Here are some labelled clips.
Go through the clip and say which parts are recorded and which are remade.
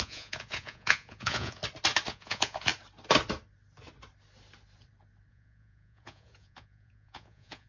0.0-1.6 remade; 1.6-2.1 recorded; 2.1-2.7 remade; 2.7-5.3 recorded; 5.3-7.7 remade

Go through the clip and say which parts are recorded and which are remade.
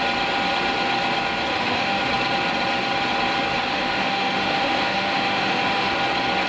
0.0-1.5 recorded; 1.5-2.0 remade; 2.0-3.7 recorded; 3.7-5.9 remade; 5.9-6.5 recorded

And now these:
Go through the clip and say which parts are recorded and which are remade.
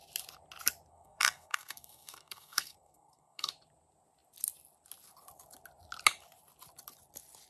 0.0-0.9 recorded; 0.9-3.5 remade; 3.5-7.5 recorded